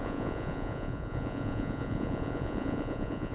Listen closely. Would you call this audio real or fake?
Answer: fake